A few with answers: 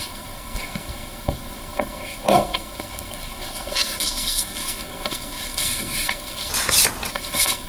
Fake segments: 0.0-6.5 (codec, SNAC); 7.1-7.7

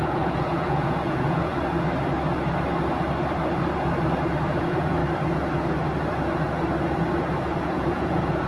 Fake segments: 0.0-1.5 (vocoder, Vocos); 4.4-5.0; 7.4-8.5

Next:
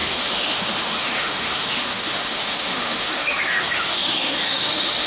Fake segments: 0.0-5.1 (autoencoder, DAC-VAE)